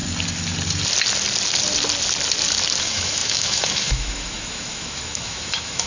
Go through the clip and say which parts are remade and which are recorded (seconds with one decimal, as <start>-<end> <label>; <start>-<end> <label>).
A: 0.0-2.8 recorded; 2.8-5.9 remade